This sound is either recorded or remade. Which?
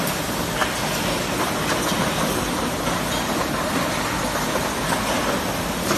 recorded